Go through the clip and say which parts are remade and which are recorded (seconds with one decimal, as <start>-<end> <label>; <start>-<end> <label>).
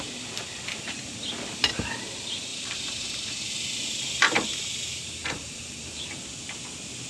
0.0-2.5 recorded; 2.5-3.5 remade; 3.5-5.2 recorded; 5.2-6.0 remade; 6.0-7.1 recorded